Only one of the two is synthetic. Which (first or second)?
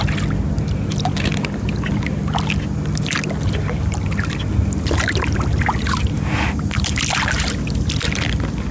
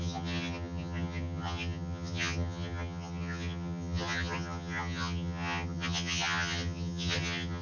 second